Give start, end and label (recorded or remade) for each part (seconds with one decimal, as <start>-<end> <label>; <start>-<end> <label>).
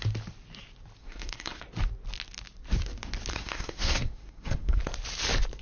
0.0-1.0 recorded; 1.0-1.6 remade; 1.6-3.3 recorded; 3.3-4.8 remade; 4.8-5.6 recorded